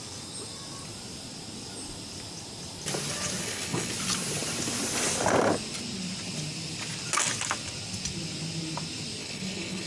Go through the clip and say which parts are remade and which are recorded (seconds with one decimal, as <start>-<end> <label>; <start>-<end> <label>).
0.0-3.4 recorded; 3.4-3.9 remade; 3.9-9.2 recorded; 9.2-9.9 remade